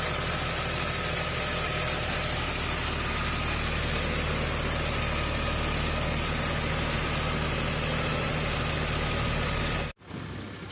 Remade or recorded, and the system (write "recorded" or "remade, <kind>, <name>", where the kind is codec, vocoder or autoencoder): recorded